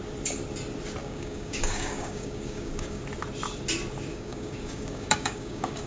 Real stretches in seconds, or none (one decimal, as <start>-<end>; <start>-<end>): 0.0-1.0; 3.0-4.1